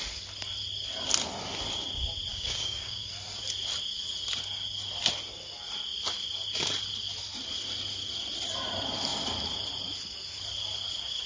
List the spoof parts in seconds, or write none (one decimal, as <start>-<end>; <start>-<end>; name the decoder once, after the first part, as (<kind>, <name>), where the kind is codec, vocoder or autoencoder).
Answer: 2.3-3.1 (codec, DAC)